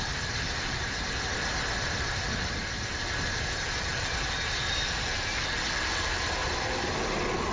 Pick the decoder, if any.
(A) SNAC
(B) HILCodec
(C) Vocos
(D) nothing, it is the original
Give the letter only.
D